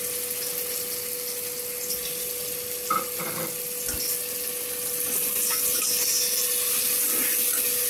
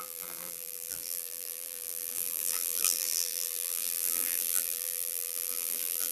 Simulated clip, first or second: second